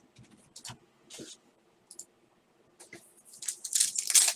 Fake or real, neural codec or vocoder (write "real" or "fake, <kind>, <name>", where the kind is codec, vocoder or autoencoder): real